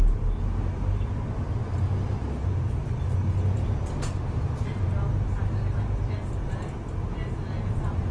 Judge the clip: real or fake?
real